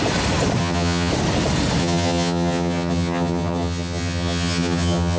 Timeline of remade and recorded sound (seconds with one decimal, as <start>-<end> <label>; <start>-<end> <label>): 0.0-0.6 recorded; 0.6-1.1 remade; 1.1-1.8 recorded; 1.8-5.2 remade